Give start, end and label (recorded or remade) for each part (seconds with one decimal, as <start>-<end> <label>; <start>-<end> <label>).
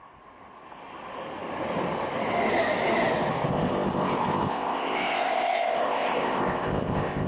0.0-3.5 recorded; 3.5-7.3 remade